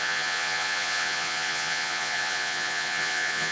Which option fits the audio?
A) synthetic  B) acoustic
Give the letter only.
A